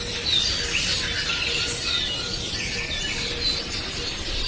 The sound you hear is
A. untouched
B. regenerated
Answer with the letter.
A